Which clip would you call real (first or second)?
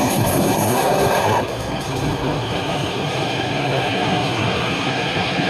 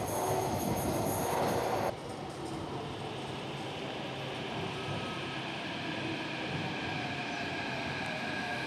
second